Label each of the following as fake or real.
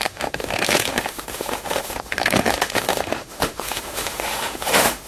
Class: fake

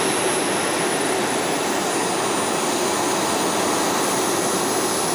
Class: real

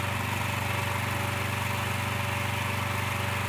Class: real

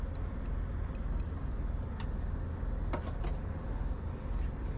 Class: real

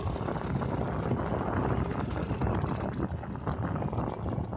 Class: real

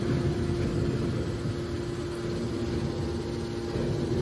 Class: real